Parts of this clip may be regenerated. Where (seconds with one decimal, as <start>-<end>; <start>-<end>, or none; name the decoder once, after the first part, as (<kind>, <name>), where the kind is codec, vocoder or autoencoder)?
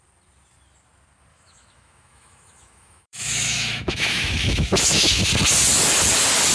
1.3-5.2 (autoencoder, DAC-VAE)